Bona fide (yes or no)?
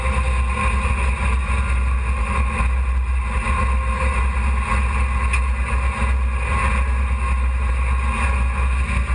yes